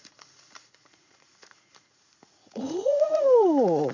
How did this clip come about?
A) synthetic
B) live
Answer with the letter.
A